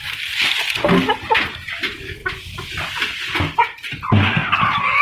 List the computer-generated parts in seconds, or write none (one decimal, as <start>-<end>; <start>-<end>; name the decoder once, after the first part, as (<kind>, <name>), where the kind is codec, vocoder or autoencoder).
2.2-3.2 (vocoder, BigVGAN v2)